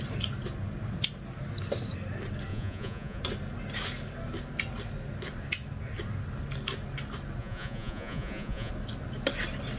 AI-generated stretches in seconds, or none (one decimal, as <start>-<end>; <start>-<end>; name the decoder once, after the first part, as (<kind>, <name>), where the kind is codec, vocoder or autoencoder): 2.5-3.2 (vocoder, Vocos); 7.4-8.7